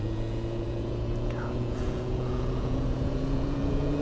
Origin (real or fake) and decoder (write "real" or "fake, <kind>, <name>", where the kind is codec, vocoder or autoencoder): fake, vocoder, Vocos